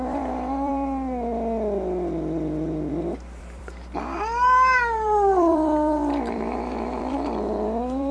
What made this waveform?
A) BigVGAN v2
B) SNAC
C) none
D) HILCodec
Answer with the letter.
A